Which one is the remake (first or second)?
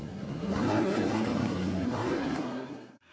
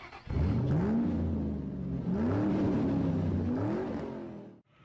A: first